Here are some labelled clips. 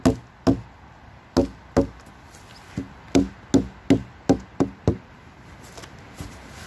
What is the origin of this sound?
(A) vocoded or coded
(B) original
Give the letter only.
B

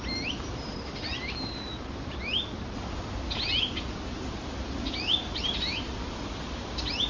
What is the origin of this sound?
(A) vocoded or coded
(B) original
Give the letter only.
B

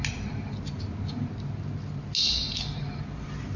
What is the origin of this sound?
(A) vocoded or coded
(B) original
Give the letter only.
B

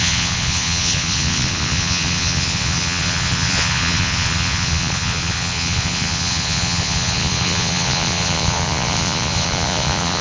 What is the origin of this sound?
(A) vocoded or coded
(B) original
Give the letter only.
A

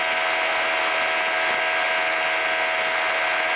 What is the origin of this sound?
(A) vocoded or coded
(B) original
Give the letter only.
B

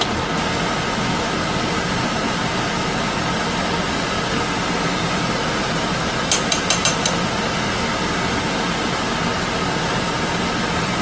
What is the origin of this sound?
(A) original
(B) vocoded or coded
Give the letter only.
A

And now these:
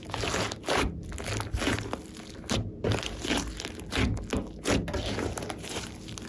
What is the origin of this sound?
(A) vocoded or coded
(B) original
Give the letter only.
B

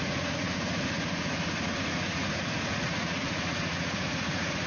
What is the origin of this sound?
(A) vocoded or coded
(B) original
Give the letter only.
A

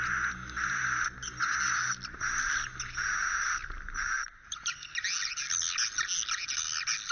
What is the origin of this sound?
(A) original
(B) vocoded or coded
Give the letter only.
A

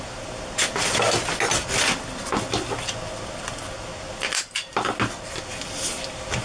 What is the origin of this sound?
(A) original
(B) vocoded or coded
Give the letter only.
A